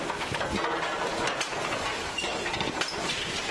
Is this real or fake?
real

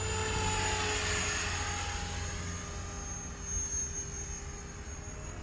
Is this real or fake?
real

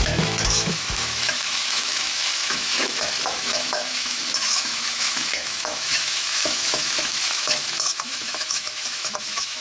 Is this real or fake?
fake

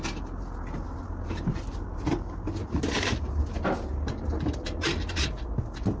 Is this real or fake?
real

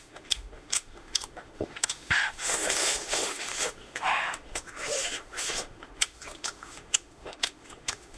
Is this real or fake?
fake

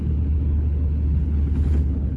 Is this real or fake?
fake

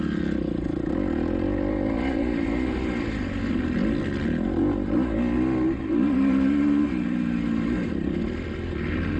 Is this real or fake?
real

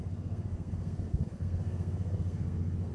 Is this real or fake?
fake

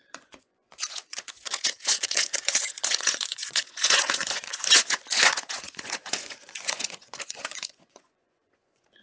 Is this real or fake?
fake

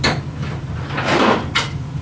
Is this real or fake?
real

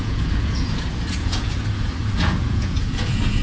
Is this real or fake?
fake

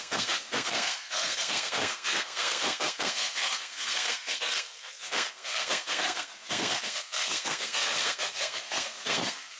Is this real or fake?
fake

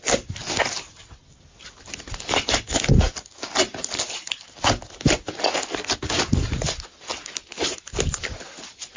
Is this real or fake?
real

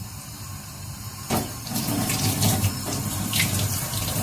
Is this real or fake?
fake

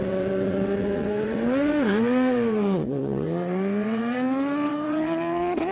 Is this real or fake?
fake